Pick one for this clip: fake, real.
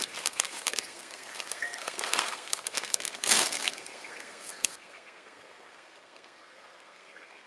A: fake